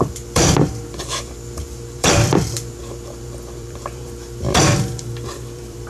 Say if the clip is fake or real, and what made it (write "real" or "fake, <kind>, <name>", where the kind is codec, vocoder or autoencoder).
fake, vocoder, BigVGAN v2